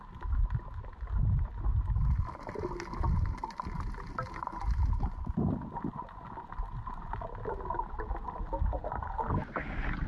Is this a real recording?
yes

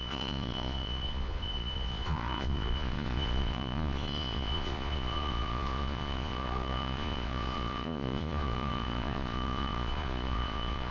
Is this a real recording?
no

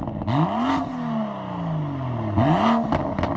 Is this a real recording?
yes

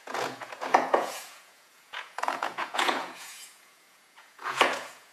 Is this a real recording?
no